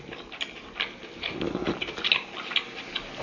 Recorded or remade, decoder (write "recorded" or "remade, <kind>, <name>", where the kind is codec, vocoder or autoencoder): recorded